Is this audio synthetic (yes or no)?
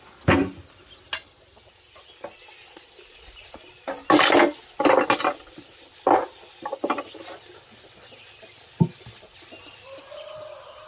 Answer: no